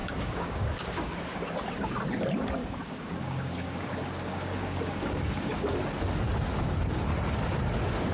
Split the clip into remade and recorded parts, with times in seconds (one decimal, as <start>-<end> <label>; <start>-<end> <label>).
0.0-1.4 remade; 1.4-2.6 recorded; 2.6-5.8 remade; 5.8-8.1 recorded